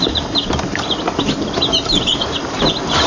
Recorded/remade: recorded